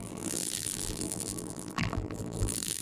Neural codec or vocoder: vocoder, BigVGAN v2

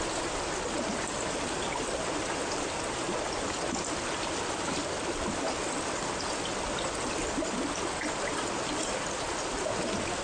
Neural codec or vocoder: none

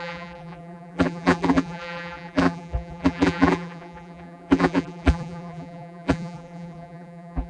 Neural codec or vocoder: vocoder, BigVGAN v2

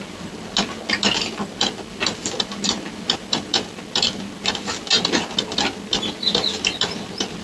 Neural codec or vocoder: none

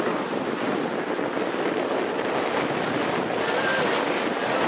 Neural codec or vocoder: none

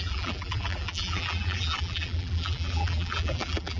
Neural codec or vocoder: vocoder, BigVGAN v2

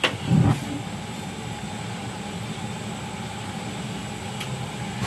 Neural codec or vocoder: none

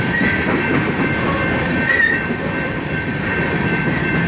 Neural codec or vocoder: vocoder, BigVGAN v2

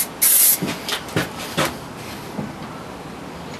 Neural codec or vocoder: none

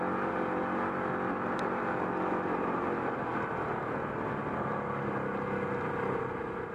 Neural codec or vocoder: none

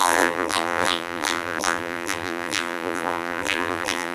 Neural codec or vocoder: vocoder, BigVGAN v2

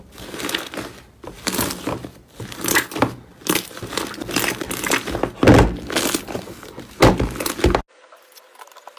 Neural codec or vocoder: none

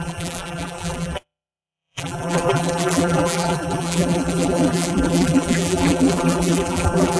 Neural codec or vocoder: vocoder, BigVGAN v2